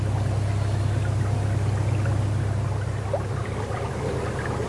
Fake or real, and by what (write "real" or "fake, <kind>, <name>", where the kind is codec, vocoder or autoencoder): real